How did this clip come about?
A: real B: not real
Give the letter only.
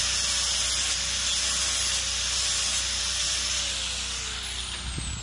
A